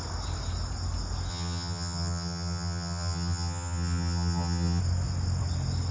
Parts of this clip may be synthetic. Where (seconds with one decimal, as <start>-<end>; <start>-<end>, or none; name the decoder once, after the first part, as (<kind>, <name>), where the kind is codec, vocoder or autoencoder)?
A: 1.3-4.8 (vocoder, HiFi-GAN)